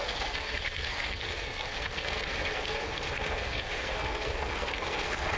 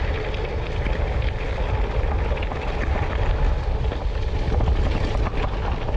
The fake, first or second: first